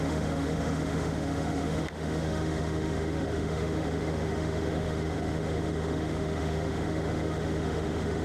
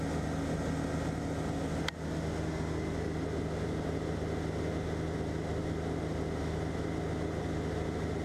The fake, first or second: first